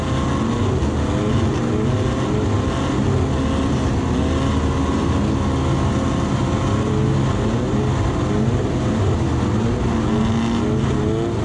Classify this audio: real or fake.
real